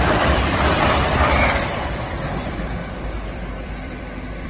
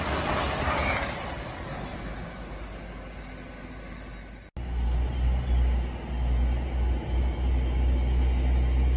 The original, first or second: second